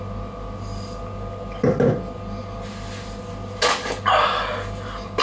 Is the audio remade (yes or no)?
no